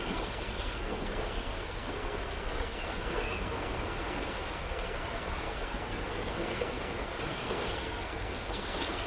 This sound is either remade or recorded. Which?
remade